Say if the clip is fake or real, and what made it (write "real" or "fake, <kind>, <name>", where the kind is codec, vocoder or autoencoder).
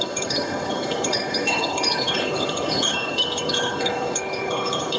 fake, codec, HILCodec